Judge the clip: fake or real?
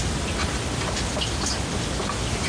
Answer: real